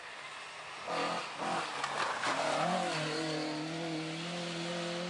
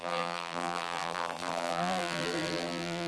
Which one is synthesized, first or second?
second